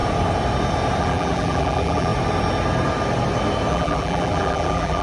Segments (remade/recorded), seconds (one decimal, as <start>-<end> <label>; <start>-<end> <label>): 0.0-1.0 recorded; 1.0-2.1 remade; 2.1-3.7 recorded; 3.7-5.0 remade

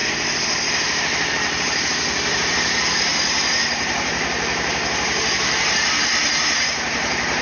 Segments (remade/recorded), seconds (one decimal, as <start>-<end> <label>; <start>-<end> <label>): 0.0-7.4 remade

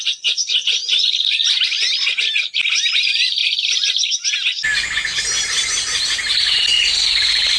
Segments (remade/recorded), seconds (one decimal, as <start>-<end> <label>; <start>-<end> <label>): 0.0-0.8 remade; 0.8-3.0 recorded; 3.0-3.4 remade; 3.4-6.9 recorded; 6.9-7.6 remade

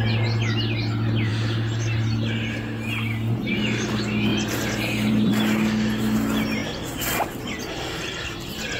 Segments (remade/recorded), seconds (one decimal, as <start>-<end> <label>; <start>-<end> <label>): 0.0-4.3 recorded; 4.3-5.3 remade; 5.3-8.8 recorded

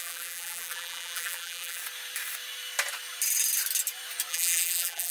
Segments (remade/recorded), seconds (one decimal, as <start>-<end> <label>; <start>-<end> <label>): 0.0-1.8 remade; 1.8-4.3 recorded; 4.3-5.1 remade

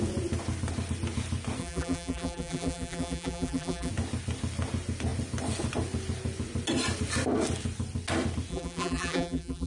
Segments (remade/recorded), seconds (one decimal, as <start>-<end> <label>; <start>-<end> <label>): 0.0-1.6 recorded; 1.6-3.9 remade; 3.9-8.5 recorded; 8.5-9.7 remade